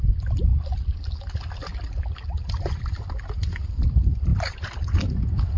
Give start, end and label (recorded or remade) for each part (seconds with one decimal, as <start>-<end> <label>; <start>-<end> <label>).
0.0-5.6 recorded